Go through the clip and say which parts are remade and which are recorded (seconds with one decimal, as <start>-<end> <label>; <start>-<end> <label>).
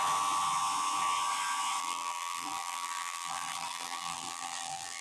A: 0.0-1.8 recorded; 1.8-5.0 remade